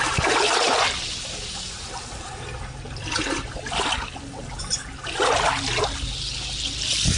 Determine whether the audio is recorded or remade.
recorded